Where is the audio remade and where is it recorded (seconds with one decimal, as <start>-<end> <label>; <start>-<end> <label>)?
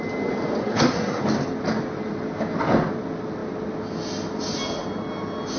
0.0-0.6 recorded; 0.6-1.2 remade; 1.2-5.6 recorded